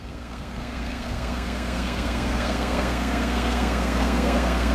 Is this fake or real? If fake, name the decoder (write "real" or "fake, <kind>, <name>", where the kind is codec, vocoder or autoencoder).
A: fake, codec, SNAC